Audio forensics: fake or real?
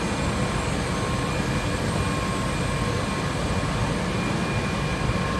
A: real